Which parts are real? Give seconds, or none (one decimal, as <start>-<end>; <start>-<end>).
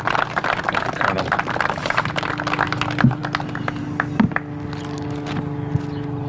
0.0-6.3